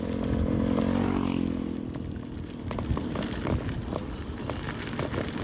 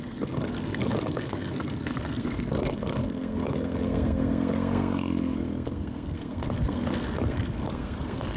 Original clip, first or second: first